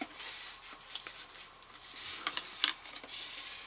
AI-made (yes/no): no